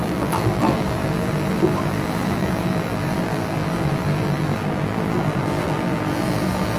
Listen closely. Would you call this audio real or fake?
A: fake